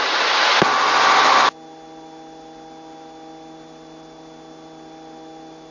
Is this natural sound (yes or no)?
yes